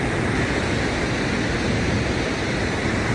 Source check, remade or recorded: recorded